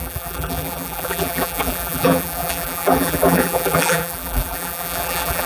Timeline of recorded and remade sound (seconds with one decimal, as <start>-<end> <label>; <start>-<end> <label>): 0.0-5.5 remade